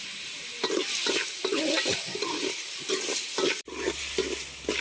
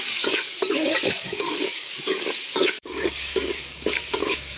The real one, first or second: first